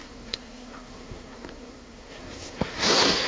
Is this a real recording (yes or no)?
no